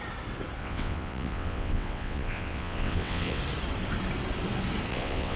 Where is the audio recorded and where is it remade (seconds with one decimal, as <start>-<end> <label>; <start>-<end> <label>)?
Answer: 0.0-0.6 recorded; 0.6-3.4 remade; 3.4-4.9 recorded; 4.9-5.4 remade